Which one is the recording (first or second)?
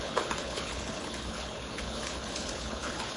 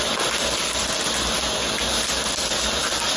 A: second